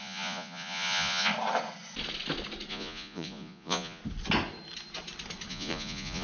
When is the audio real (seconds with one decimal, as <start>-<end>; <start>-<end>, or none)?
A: 1.3-2.7; 4.0-5.5